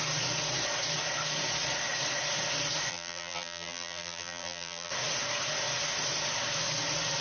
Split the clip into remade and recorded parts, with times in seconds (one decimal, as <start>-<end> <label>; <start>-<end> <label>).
0.0-2.9 recorded; 2.9-4.9 remade; 4.9-7.2 recorded